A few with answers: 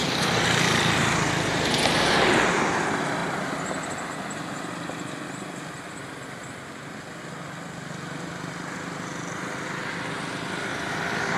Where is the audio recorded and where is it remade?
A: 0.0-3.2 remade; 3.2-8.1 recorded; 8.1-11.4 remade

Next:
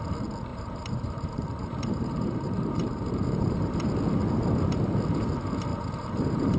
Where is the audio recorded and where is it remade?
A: 0.0-0.5 recorded; 0.5-3.9 remade; 3.9-5.7 recorded; 5.7-6.6 remade

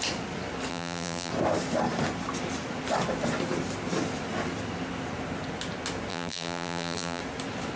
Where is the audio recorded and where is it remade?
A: 0.0-0.7 recorded; 0.7-1.3 remade; 1.3-6.1 recorded; 6.1-7.2 remade; 7.2-7.8 recorded

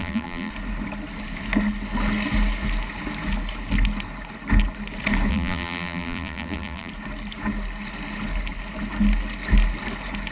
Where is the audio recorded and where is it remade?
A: 0.0-0.5 remade; 0.5-5.3 recorded; 5.3-6.9 remade; 6.9-10.3 recorded

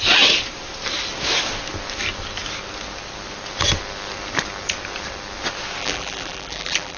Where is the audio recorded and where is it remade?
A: 0.0-5.8 recorded; 5.8-7.0 remade